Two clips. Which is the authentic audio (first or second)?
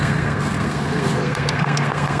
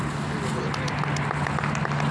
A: second